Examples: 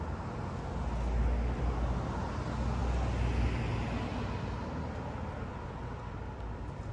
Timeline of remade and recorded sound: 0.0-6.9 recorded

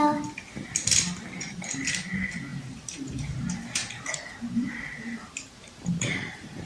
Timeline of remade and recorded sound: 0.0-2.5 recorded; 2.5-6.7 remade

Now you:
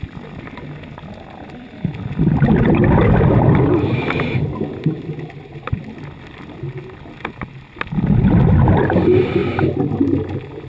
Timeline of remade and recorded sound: 0.0-10.7 recorded

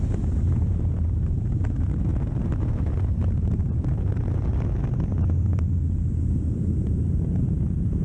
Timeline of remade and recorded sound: 0.0-4.5 remade; 4.5-5.1 recorded; 5.1-8.0 remade

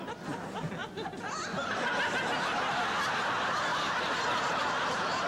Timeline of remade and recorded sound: 0.0-3.7 recorded; 3.7-4.5 remade; 4.5-5.3 recorded

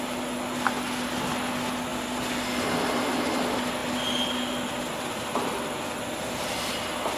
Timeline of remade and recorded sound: 0.0-7.2 recorded